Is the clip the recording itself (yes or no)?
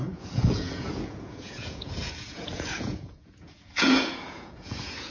no